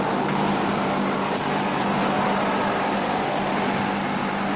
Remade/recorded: recorded